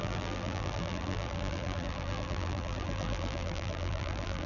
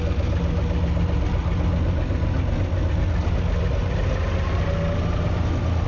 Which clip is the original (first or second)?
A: second